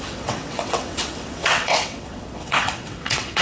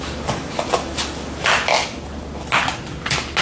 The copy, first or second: first